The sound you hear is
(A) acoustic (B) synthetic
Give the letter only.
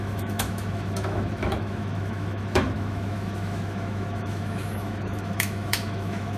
B